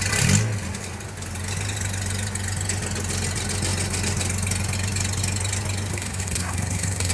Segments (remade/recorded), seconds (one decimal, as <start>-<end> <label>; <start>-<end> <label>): 0.0-5.9 recorded; 5.9-7.1 remade